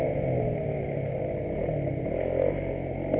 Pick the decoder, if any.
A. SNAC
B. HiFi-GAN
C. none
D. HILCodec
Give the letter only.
C